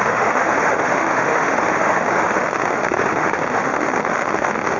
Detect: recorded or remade remade